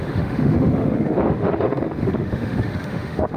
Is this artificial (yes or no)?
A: yes